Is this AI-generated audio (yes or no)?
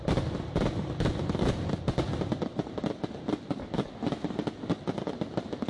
no